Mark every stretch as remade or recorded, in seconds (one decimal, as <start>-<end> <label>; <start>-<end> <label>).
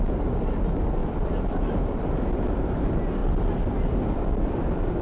0.0-1.0 recorded; 1.0-2.8 remade; 2.8-3.2 recorded; 3.2-4.5 remade; 4.5-5.0 recorded